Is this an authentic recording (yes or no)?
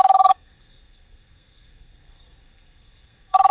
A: no